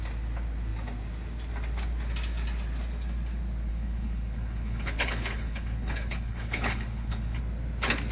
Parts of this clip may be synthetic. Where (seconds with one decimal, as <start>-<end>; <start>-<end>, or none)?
3.7-7.4